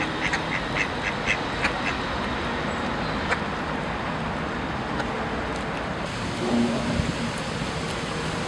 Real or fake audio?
real